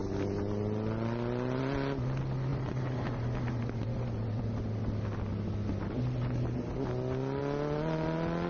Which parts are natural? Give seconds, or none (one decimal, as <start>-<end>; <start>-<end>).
0.0-2.5; 4.4-8.5